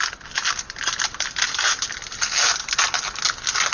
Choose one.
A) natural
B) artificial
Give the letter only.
A